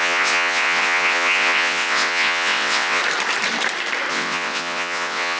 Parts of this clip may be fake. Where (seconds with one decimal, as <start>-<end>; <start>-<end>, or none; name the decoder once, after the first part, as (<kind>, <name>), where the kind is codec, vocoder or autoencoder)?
0.0-3.0 (vocoder, WaveNeXt); 4.1-5.4